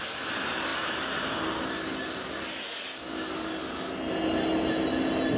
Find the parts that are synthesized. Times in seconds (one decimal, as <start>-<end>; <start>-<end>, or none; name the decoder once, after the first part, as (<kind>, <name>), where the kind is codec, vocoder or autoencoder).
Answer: none